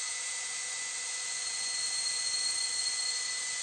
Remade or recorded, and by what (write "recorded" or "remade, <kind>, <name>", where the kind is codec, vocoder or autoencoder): remade, vocoder, Vocos